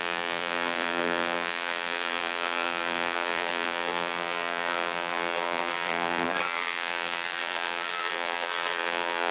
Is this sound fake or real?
fake